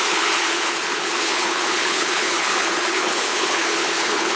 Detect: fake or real fake